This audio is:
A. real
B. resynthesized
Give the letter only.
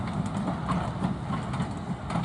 A